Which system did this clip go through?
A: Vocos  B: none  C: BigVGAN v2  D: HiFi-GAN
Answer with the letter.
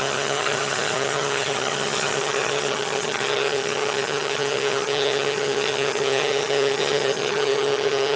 D